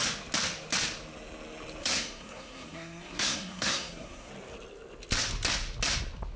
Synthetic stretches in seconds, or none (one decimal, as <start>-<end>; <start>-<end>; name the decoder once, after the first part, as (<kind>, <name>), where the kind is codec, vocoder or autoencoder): 1.8-4.3 (codec, SNAC)